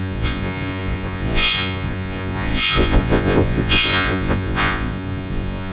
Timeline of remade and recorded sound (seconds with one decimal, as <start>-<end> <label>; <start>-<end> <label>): 0.0-5.7 remade